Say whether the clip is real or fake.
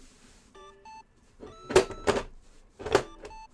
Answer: fake